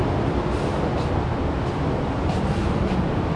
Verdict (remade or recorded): remade